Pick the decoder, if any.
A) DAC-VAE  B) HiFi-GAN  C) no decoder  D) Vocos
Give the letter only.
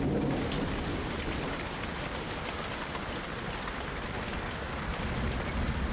C